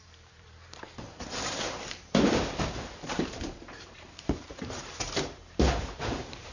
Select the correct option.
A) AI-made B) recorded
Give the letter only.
A